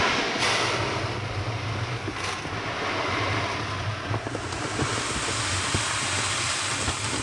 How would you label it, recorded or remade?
recorded